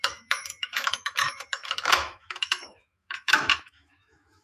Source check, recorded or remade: remade